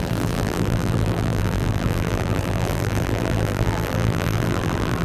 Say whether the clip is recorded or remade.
remade